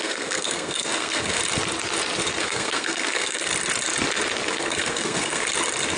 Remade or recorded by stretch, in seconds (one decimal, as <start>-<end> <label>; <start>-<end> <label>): 0.0-1.4 remade; 1.4-2.4 recorded; 2.4-3.5 remade; 3.5-4.5 recorded; 4.5-5.4 remade; 5.4-6.0 recorded